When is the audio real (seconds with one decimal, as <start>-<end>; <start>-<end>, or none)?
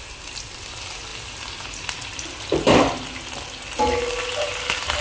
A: 0.0-5.0